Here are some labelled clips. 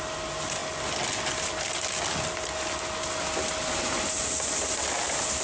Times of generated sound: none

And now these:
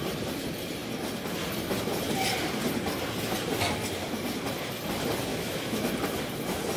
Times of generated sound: 5.3-5.9 (autoencoder, DAC-VAE)

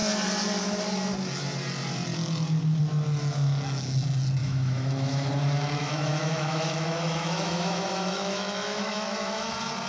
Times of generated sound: 4.4-5.3 (autoencoder, DAC-VAE); 5.8-9.5

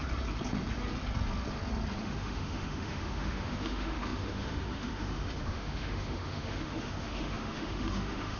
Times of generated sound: 2.0-8.4 (autoencoder, DAC-VAE)